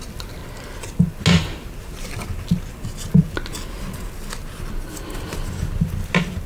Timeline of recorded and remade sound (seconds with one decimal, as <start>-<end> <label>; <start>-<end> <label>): 0.0-6.5 recorded